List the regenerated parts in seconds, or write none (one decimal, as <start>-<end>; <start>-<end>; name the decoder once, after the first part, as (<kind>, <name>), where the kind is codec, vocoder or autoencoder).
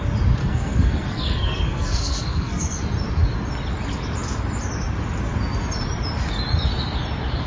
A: 0.4-2.8 (codec, SNAC)